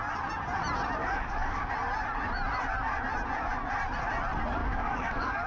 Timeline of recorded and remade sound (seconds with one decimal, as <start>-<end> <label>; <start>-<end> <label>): 0.0-1.0 recorded; 1.0-1.7 remade; 1.7-4.6 recorded; 4.6-5.5 remade